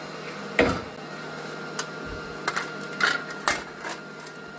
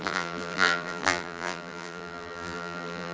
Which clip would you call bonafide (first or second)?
first